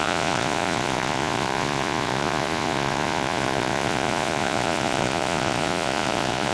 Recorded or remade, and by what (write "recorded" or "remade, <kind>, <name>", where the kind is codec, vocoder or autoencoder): remade, vocoder, Vocos